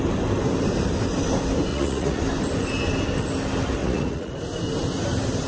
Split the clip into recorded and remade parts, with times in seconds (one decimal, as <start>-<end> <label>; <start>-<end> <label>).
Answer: 0.0-1.7 recorded; 1.7-2.2 remade; 2.2-3.8 recorded; 3.8-4.3 remade; 4.3-5.5 recorded